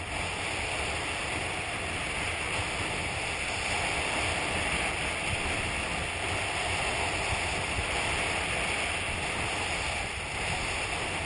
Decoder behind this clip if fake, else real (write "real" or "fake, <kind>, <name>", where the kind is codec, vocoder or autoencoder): real